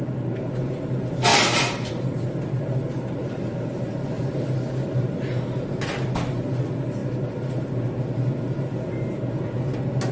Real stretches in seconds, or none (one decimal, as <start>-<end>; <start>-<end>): 0.0-1.3; 1.9-3.2; 3.9-10.1